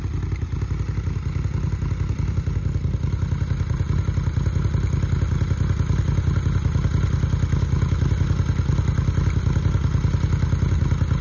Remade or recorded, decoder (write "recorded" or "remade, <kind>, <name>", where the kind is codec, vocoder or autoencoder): recorded